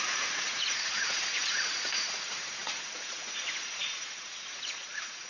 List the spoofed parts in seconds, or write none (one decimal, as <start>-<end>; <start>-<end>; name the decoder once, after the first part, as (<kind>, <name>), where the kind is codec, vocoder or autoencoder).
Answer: 0.0-5.3 (vocoder, Vocos)